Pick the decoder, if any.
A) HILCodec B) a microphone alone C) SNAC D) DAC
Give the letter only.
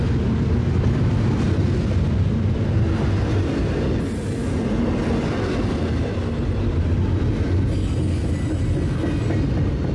B